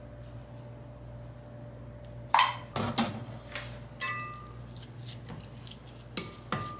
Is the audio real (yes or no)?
yes